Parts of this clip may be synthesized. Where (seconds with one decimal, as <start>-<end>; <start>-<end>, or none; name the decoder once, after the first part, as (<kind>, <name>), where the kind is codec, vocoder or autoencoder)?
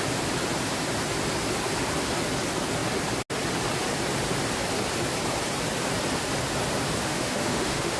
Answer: 7.1-8.0 (autoencoder, DAC-VAE)